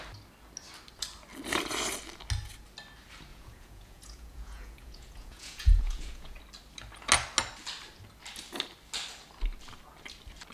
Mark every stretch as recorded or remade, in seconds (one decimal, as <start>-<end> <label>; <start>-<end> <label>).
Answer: 0.0-3.3 recorded; 3.3-6.4 remade; 6.4-10.5 recorded